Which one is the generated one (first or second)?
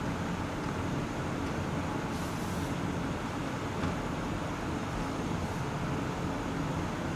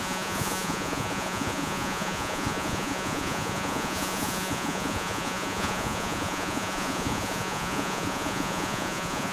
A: second